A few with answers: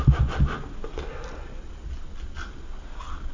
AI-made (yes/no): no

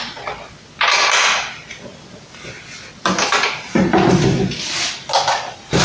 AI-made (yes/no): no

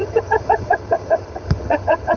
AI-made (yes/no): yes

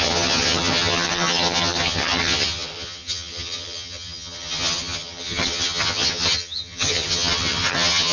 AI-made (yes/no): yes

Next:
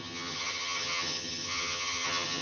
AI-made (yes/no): yes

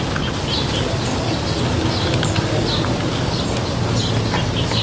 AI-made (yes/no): no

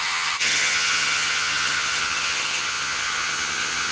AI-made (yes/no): yes